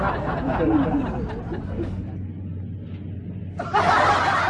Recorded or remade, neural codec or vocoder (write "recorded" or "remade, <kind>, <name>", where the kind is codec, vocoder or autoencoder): recorded